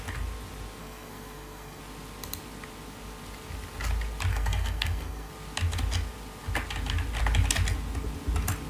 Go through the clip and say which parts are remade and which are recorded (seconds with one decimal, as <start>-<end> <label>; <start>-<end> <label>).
0.0-0.8 recorded; 0.8-1.8 remade; 1.8-4.3 recorded; 4.3-5.3 remade; 5.3-8.7 recorded